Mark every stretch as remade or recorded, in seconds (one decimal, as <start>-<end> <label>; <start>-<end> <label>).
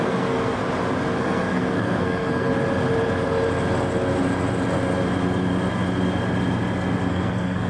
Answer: 0.0-0.6 remade; 0.6-1.2 recorded; 1.2-2.5 remade; 2.5-7.1 recorded; 7.1-7.7 remade